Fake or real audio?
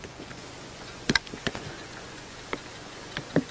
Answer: fake